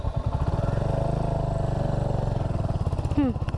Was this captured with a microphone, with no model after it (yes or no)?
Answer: yes